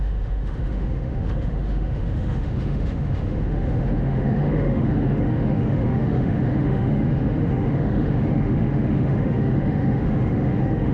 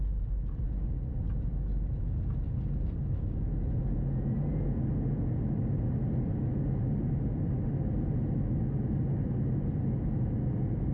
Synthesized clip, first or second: first